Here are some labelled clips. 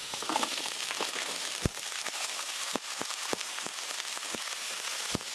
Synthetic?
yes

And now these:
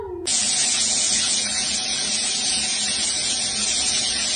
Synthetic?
yes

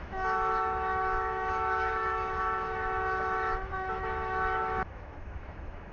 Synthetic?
yes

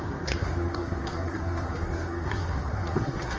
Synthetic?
yes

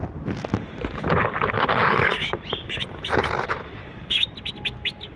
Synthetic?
no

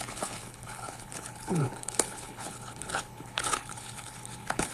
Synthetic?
yes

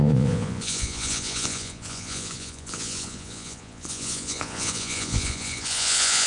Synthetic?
yes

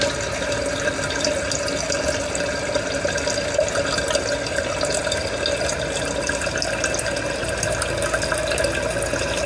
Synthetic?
no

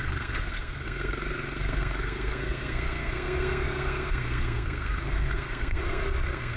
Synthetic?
yes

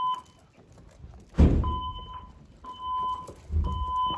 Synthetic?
no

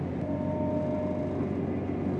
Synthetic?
no